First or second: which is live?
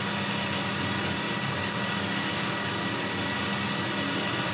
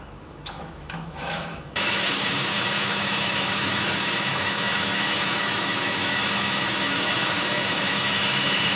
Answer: first